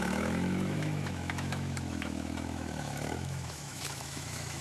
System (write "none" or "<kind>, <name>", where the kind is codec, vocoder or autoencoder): autoencoder, DAC-VAE